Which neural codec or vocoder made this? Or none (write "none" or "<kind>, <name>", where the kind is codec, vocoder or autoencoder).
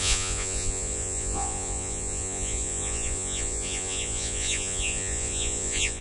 vocoder, Vocos